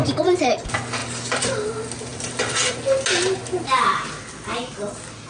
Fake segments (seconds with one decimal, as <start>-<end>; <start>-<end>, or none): 1.0-1.7; 2.1-2.7